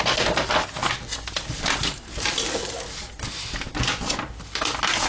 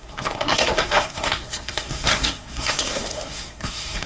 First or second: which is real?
first